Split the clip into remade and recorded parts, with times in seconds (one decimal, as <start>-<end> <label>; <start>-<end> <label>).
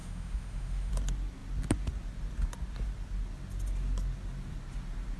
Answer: 0.0-0.9 remade; 0.9-5.2 recorded